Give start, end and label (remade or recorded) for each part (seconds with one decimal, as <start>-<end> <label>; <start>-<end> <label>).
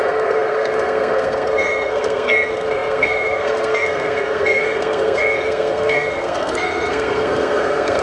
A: 0.0-8.0 remade